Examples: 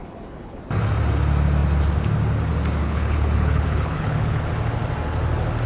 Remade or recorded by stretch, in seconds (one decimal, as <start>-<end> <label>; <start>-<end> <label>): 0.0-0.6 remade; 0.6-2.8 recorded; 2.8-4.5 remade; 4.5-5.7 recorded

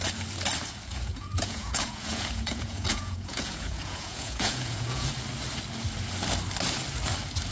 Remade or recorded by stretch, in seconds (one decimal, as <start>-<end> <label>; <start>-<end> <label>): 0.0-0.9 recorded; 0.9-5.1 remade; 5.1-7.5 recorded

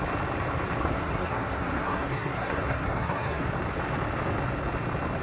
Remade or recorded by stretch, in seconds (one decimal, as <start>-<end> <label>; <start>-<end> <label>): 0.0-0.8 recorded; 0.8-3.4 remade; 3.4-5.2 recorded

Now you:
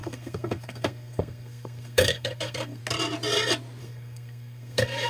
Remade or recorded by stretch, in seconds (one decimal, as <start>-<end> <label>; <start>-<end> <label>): 0.0-2.8 remade; 2.8-3.8 recorded; 3.8-5.1 remade

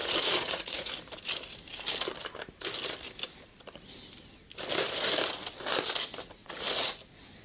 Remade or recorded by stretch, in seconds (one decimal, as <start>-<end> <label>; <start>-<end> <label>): 0.0-0.9 remade; 0.9-6.4 recorded; 6.4-7.0 remade; 7.0-7.4 recorded